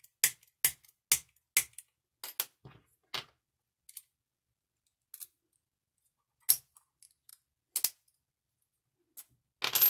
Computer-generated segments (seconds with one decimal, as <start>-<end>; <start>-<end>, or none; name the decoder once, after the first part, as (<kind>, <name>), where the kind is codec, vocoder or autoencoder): none